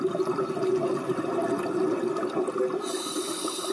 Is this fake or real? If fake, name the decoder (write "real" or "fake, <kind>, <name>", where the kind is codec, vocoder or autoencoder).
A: real